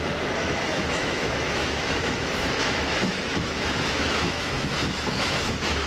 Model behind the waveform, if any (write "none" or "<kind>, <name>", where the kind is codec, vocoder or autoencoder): autoencoder, DAC-VAE